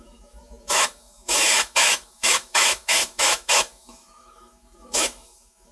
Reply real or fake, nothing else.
fake